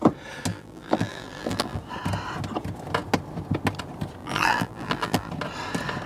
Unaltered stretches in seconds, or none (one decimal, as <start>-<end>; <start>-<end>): 0.0-0.5; 1.8-4.2; 5.3-6.1